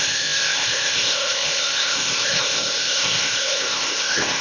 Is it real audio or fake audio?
fake